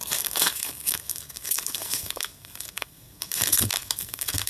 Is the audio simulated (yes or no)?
yes